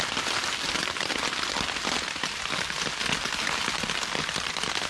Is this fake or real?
real